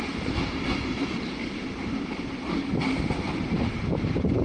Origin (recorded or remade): remade